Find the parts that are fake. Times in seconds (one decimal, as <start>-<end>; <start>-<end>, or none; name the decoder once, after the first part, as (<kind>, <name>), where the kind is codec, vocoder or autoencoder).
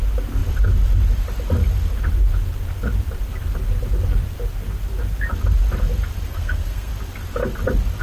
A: 6.3-6.9 (codec, SNAC)